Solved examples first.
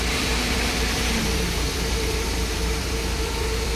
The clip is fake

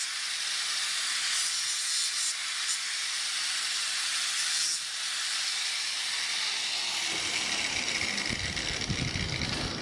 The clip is real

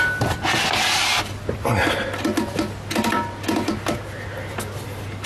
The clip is real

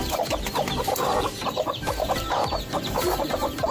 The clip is fake